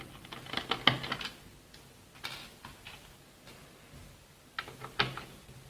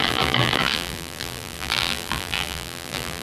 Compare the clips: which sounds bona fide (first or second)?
first